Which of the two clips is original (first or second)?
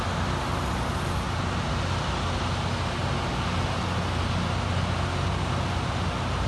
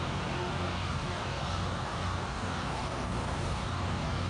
first